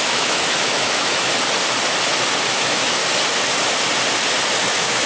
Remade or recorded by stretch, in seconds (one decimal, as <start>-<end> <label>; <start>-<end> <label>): 0.0-1.3 remade; 1.3-2.5 recorded; 2.5-3.0 remade; 3.0-4.6 recorded; 4.6-5.1 remade